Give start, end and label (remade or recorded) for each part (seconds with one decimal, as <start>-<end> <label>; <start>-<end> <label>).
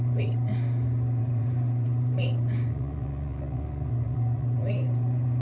0.0-0.5 remade; 0.5-1.2 recorded; 1.2-5.4 remade